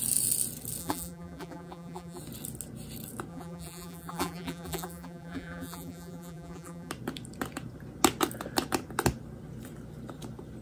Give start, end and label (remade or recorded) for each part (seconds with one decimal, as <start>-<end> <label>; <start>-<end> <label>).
0.0-0.8 recorded; 0.8-2.2 remade; 2.2-3.3 recorded; 3.3-6.9 remade; 6.9-10.6 recorded